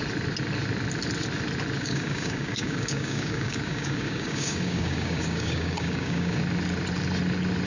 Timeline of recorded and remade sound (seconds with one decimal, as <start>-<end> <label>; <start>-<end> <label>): 0.0-1.8 recorded; 1.8-6.4 remade; 6.4-7.7 recorded